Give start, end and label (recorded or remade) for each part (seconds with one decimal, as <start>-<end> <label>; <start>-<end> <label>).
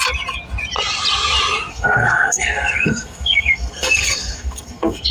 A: 0.0-1.7 recorded; 1.7-5.1 remade